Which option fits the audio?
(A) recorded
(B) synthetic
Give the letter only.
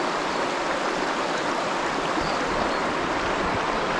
A